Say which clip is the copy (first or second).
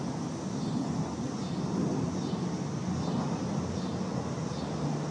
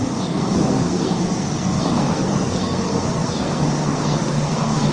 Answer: second